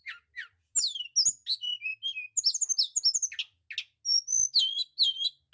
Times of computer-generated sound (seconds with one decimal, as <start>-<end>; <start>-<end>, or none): none